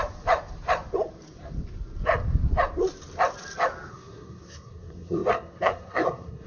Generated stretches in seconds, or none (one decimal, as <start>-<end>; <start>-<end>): 3.9-6.5